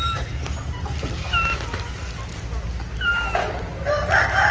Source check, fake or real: real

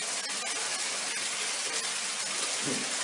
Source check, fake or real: real